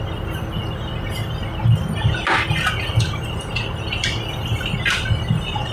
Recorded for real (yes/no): yes